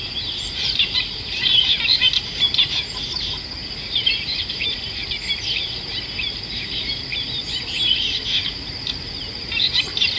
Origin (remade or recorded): remade